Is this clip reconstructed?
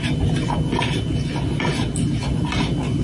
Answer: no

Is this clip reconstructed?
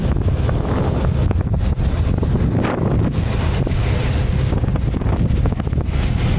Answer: no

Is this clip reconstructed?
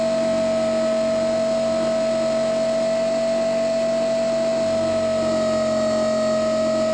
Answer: no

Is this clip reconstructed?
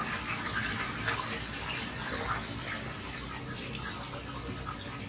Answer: no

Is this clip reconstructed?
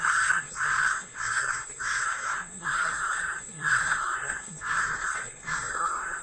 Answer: yes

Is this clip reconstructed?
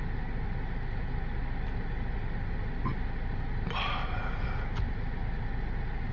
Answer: no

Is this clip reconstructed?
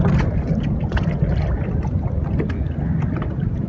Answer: no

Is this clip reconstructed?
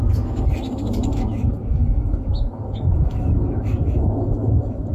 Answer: yes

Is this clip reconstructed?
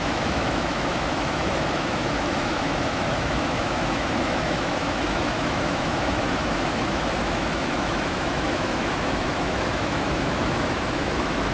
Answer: yes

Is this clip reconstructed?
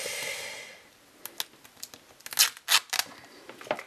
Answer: no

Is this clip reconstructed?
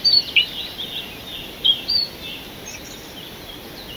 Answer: no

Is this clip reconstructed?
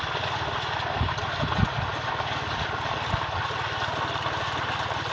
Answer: no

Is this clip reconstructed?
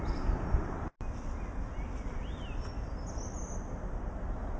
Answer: no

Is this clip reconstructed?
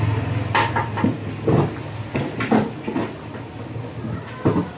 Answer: no